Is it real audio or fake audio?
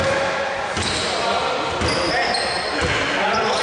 real